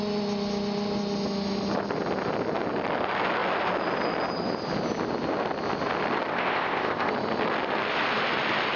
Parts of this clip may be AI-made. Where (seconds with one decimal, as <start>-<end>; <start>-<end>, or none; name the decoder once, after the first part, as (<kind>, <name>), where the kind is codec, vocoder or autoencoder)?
6.3-7.1 (codec, ZipCodec)